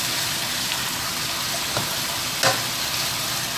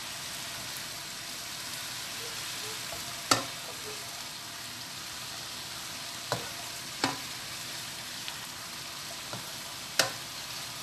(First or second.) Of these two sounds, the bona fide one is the first